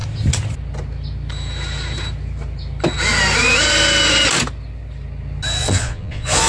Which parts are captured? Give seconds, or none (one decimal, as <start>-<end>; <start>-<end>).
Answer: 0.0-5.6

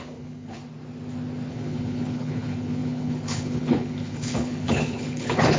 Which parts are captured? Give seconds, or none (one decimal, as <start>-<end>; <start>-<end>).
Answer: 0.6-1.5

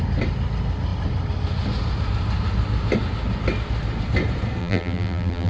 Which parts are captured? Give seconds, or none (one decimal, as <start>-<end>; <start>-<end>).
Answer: 0.0-4.6

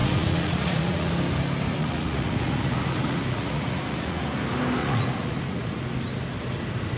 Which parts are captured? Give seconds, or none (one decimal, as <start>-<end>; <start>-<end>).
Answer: 1.1-1.8; 4.2-4.8; 5.8-7.0

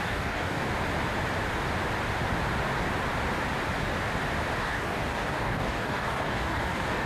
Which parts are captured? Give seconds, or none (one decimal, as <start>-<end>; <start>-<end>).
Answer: 0.7-4.6

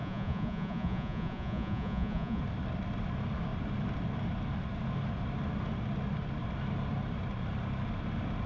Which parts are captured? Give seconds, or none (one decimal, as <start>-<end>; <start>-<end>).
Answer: 2.4-8.5